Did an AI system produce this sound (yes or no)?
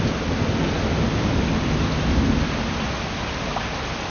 no